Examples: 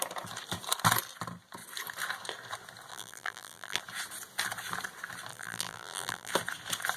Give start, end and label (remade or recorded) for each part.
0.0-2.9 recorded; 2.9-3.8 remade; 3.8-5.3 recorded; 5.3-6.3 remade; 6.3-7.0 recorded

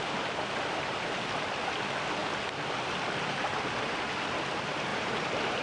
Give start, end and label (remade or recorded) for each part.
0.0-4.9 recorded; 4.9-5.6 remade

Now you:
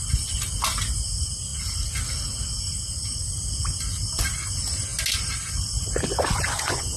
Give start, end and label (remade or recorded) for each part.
0.0-6.3 recorded; 6.3-7.0 remade

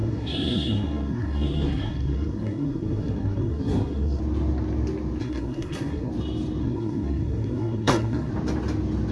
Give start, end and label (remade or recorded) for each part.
0.0-4.2 remade; 4.2-5.2 recorded; 5.2-6.1 remade; 6.1-6.6 recorded; 6.6-8.3 remade; 8.3-9.1 recorded

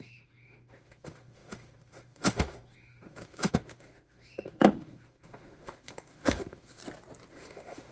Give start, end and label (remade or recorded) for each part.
0.0-6.8 remade; 6.8-7.3 recorded; 7.3-7.9 remade

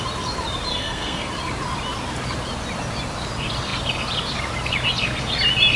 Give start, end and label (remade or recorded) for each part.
0.0-0.7 recorded; 0.7-1.3 remade; 1.3-5.8 recorded